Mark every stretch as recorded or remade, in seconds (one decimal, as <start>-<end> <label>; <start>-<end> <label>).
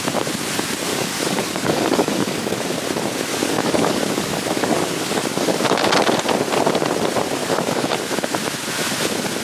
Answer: 0.0-0.9 recorded; 0.9-2.6 remade; 2.6-3.3 recorded; 3.3-5.9 remade; 5.9-7.4 recorded; 7.4-7.9 remade; 7.9-9.4 recorded